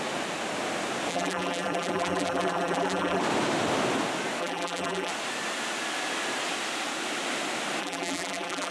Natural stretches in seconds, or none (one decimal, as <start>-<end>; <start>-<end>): 0.0-1.1; 3.2-4.4; 5.1-7.8